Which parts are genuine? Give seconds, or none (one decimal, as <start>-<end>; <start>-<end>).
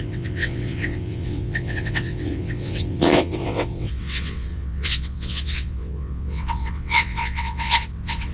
none